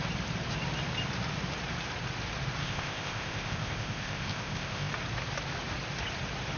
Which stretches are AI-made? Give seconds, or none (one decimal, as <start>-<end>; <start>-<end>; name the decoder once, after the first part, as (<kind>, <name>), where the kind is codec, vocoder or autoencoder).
2.6-4.9 (codec, ZipCodec)